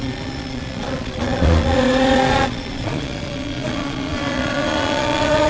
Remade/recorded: remade